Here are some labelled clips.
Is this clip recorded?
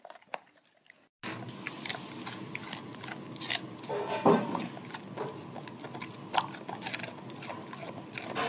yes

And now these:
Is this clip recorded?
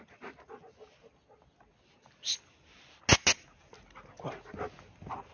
yes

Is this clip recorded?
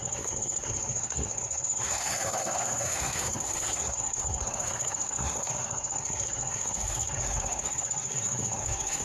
no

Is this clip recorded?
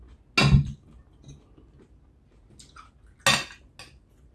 yes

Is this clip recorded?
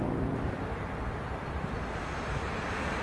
yes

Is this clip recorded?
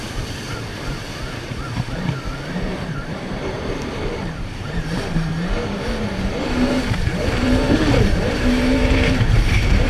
no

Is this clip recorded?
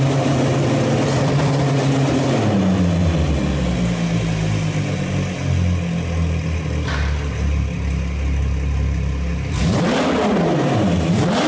yes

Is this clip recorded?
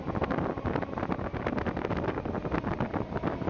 yes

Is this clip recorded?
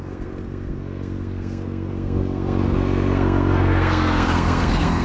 no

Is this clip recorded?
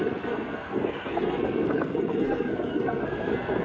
no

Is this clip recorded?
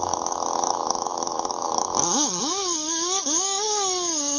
no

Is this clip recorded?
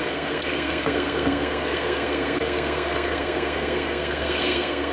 no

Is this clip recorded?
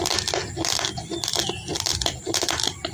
yes